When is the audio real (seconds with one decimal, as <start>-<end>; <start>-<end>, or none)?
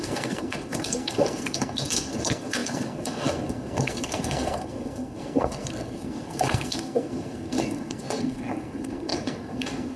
none